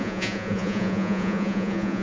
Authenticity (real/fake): fake